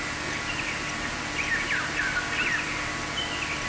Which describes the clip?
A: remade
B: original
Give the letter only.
B